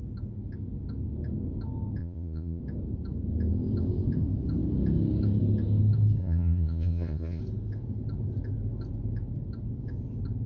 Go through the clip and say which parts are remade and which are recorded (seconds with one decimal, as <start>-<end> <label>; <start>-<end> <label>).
0.0-2.0 recorded; 2.0-2.6 remade; 2.6-6.2 recorded; 6.2-7.4 remade; 7.4-10.5 recorded